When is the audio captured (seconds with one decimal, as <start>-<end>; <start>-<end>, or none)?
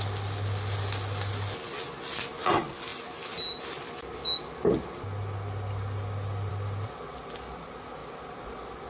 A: 0.0-8.9